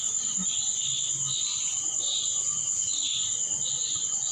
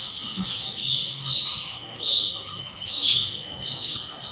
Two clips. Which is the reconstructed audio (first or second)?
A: second